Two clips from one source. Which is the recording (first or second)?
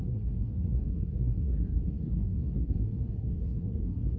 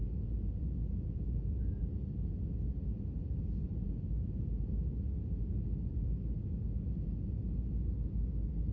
second